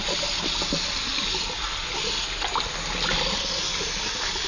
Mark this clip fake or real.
real